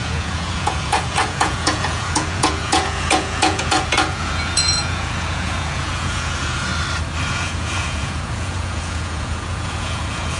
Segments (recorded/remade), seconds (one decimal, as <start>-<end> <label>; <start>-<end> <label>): 0.0-6.7 remade; 6.7-7.3 recorded; 7.3-10.4 remade